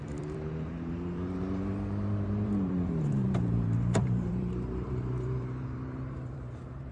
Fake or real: fake